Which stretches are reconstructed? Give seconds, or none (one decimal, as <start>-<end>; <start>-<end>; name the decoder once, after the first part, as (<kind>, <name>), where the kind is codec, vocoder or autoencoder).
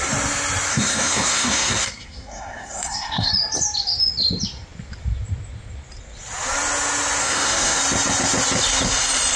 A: 0.7-3.3 (codec, SNAC); 7.2-7.8